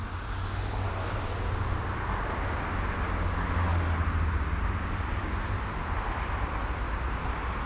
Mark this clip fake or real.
real